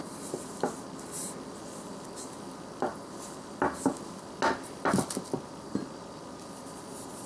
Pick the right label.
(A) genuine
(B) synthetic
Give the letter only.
A